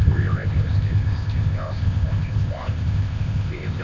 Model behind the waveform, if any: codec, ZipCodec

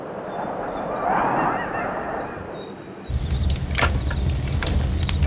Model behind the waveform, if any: none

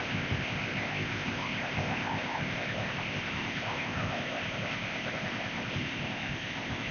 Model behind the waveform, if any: codec, ZipCodec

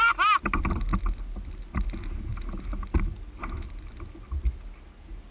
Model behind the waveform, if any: none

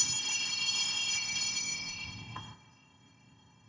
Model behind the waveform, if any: codec, ZipCodec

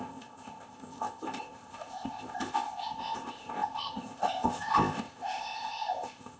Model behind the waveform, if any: codec, ZipCodec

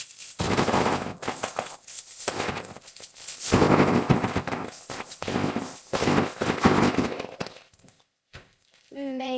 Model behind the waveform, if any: codec, ZipCodec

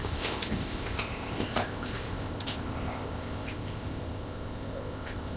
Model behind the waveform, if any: codec, ZipCodec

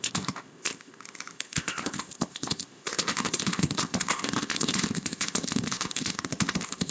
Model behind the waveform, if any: codec, ZipCodec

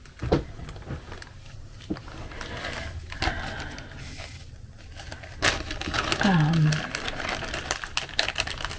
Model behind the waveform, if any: none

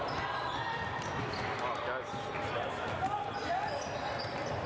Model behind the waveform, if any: none